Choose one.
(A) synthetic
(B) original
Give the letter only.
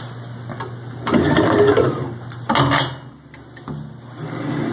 B